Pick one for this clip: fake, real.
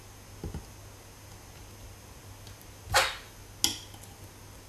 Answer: real